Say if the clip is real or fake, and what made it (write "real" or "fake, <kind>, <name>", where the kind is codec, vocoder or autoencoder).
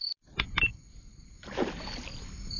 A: real